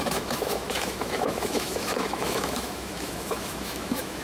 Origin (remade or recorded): remade